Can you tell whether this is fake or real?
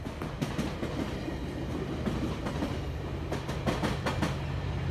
real